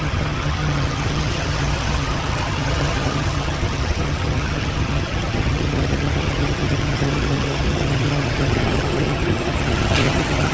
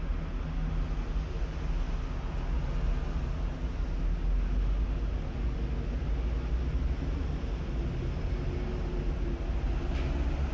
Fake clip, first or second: first